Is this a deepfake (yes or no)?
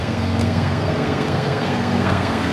yes